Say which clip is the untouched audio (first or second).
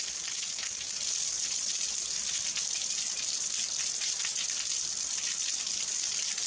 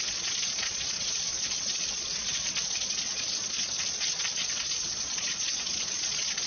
first